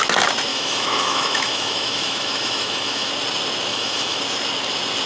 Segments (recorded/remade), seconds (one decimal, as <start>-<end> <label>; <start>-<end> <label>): 0.0-0.5 recorded; 0.5-3.1 remade; 3.1-3.7 recorded; 3.7-4.2 remade; 4.2-5.1 recorded